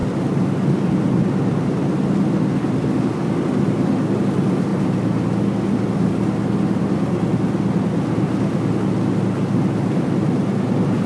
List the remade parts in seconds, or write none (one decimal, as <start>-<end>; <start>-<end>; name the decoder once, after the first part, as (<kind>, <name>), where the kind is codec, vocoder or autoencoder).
none

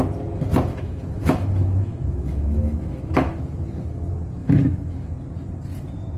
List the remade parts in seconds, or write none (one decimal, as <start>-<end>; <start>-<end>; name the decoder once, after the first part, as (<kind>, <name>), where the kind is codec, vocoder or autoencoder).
0.7-3.4 (autoencoder, DAC-VAE); 4.4-5.1

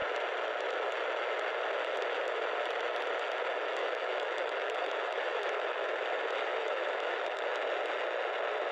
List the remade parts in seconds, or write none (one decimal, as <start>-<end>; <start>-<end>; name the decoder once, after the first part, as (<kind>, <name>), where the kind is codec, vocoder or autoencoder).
3.8-5.9 (autoencoder, DAC-VAE); 6.5-7.5